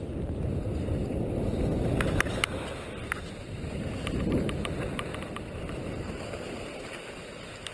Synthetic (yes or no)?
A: no